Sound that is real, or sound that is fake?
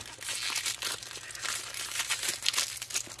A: real